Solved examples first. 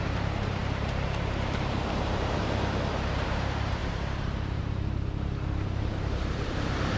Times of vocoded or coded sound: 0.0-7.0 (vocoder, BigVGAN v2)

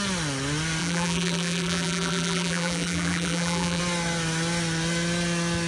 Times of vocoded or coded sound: 0.8-3.8 (vocoder, BigVGAN v2)

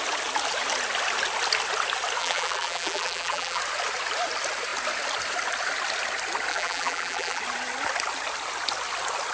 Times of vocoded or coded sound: 2.2-3.6 (vocoder, BigVGAN v2); 6.5-7.4

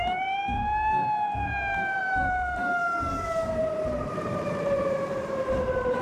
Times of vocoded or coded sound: 0.0-0.5 (vocoder, BigVGAN v2); 2.0-6.0

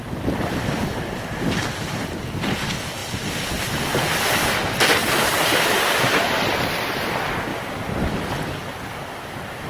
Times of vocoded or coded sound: 0.0-0.8 (vocoder, BigVGAN v2); 5.0-6.0; 7.5-8.0

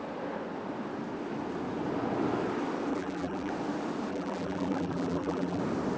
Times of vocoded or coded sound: 2.9-3.5 (vocoder, BigVGAN v2); 4.1-5.6